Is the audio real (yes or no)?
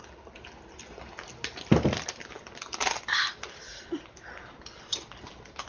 yes